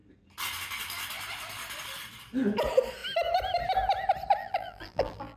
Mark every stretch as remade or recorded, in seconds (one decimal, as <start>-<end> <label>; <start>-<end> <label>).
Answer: 0.0-4.4 recorded; 4.4-5.4 remade

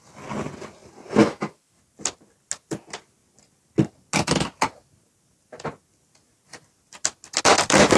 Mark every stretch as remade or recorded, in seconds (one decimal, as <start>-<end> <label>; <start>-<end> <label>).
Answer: 0.0-1.2 recorded; 1.2-1.8 remade; 1.8-8.0 recorded

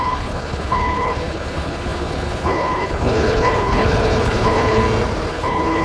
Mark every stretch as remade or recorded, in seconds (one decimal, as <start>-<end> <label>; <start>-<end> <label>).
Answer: 0.0-4.8 remade; 4.8-5.3 recorded; 5.3-5.8 remade